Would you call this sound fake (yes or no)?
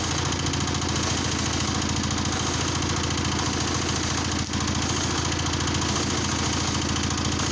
no